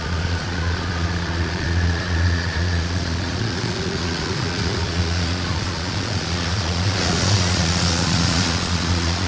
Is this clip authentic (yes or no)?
no